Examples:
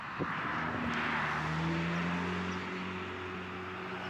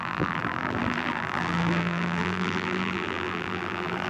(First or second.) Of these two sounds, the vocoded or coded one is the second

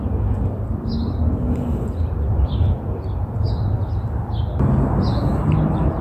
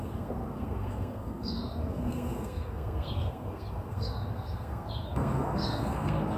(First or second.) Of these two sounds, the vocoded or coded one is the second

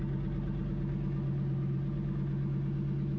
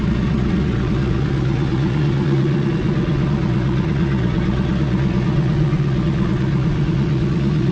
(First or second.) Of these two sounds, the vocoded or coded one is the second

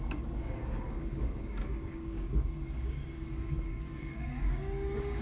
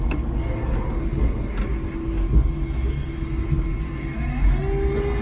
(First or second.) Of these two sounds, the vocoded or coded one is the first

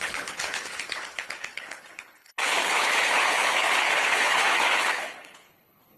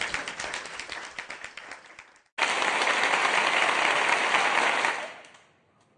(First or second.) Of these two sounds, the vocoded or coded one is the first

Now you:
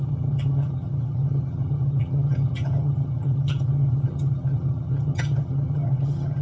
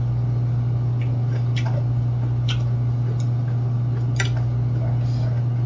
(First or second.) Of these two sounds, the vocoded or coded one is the first